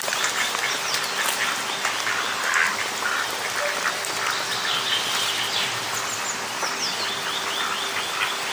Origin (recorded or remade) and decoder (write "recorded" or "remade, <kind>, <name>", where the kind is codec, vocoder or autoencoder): recorded